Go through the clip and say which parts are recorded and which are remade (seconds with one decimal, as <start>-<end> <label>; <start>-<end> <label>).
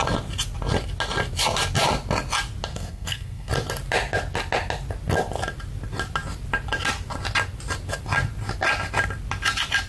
0.0-2.7 recorded; 2.7-3.5 remade; 3.5-9.9 recorded